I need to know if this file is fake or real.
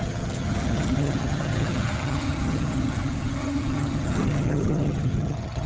fake